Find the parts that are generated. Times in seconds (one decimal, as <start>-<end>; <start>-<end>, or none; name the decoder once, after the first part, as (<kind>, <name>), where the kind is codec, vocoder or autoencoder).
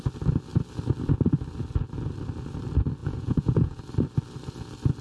3.0-3.8 (vocoder, Vocos)